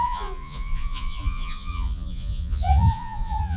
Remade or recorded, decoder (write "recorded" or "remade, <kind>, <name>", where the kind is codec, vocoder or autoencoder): remade, vocoder, Vocos